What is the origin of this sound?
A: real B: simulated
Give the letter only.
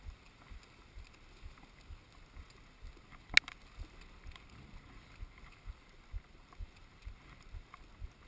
A